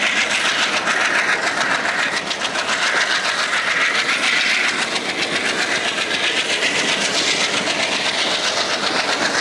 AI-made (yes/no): no